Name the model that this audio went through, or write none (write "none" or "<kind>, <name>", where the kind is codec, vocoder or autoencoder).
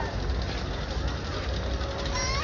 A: none